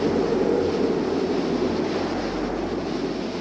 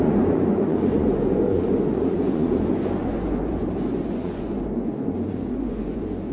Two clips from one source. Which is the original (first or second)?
first